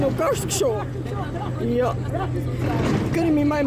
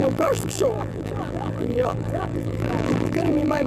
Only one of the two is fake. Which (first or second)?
second